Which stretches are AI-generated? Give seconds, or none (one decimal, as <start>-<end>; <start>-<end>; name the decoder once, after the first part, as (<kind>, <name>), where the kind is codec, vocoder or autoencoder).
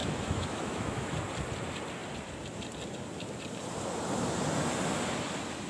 0.0-1.2 (autoencoder, DAC-VAE)